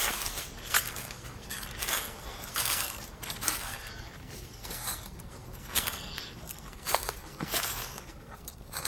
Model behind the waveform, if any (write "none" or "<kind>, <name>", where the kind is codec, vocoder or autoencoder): codec, SNAC